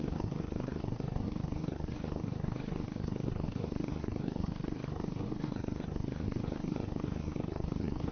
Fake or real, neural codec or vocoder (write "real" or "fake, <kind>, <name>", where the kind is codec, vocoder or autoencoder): fake, codec, SNAC